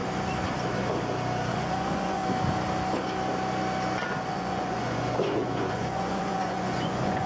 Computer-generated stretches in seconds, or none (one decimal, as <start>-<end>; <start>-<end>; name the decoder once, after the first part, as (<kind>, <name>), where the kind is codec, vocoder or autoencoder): 1.5-2.2 (vocoder, Vocos); 4.3-7.3